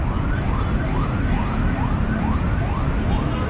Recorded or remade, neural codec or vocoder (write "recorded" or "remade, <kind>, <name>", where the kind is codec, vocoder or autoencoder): recorded